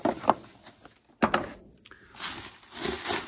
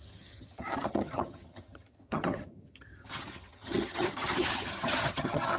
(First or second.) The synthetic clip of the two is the second